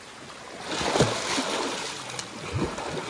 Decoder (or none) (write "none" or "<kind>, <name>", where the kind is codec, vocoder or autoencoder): none